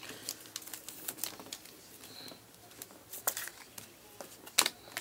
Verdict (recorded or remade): recorded